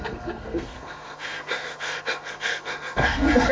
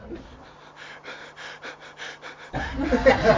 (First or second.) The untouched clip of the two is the second